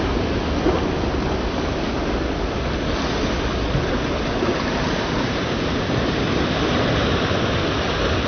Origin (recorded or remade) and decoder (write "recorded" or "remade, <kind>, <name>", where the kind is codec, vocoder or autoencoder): recorded